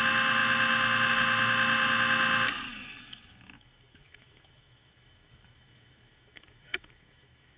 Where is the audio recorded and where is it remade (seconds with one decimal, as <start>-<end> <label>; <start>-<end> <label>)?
0.0-2.7 recorded; 2.7-7.6 remade